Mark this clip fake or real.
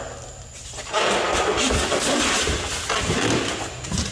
real